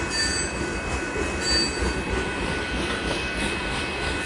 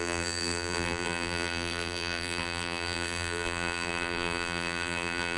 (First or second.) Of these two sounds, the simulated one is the second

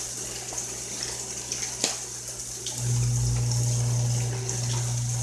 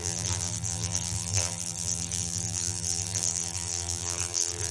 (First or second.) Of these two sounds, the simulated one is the second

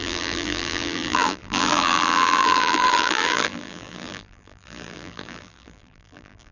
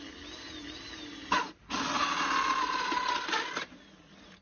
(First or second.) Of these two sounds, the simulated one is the first